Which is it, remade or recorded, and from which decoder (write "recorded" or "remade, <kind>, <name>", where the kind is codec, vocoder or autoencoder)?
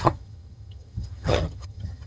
remade, vocoder, HiFi-GAN